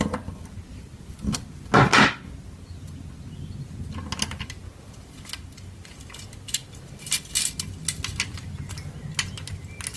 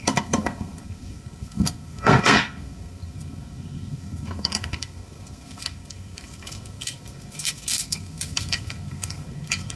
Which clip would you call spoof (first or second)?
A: second